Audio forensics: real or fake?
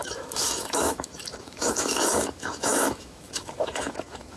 fake